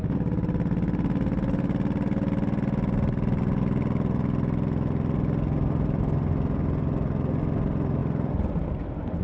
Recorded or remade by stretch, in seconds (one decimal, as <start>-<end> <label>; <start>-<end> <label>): 0.0-9.2 recorded